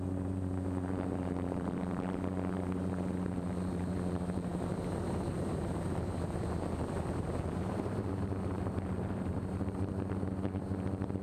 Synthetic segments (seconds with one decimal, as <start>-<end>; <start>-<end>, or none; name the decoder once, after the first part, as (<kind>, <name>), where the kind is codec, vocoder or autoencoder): 0.0-11.2 (vocoder, BigVGAN v2)

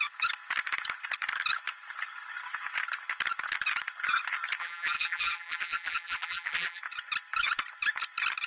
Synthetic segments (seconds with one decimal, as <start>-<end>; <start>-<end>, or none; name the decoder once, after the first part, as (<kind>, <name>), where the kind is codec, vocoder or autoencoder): 4.6-6.8 (vocoder, BigVGAN v2)

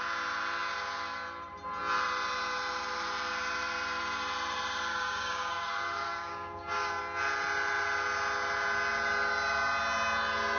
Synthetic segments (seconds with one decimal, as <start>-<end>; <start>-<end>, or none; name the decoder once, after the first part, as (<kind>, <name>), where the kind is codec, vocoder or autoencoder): 4.9-7.0 (codec, DAC)